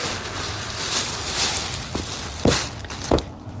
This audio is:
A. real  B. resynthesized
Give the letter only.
A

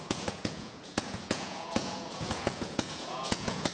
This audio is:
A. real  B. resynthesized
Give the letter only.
B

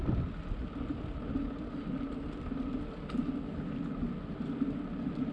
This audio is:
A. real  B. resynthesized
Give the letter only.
A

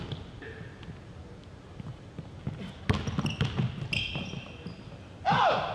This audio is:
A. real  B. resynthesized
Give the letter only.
A